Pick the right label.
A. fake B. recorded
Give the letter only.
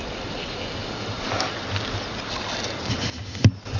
B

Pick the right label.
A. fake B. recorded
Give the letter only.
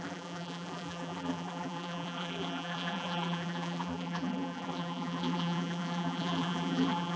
A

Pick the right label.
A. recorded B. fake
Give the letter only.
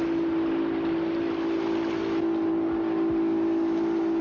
A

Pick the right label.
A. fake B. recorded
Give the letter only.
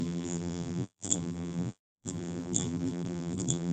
A